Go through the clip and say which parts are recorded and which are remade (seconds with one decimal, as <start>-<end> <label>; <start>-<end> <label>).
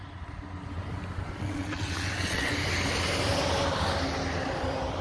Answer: 0.0-1.4 recorded; 1.4-2.5 remade; 2.5-5.0 recorded